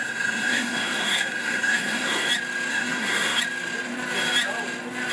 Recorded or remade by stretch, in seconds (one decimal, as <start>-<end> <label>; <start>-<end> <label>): 0.0-2.3 remade; 2.3-2.7 recorded; 2.7-3.4 remade; 3.4-5.1 recorded